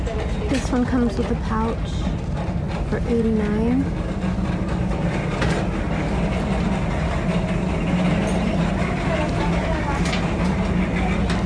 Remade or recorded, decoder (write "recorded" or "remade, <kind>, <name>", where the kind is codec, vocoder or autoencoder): recorded